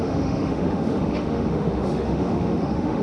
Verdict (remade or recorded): remade